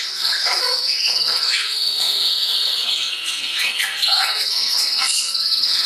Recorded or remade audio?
remade